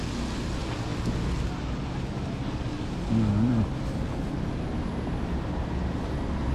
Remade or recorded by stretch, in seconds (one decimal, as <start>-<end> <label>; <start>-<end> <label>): 0.0-6.5 recorded